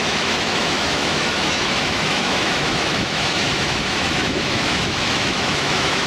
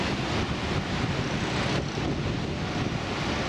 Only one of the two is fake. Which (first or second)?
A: first